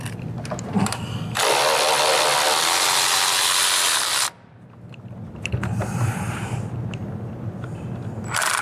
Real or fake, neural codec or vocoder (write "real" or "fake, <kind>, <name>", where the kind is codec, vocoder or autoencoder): real